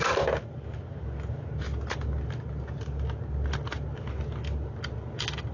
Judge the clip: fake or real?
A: real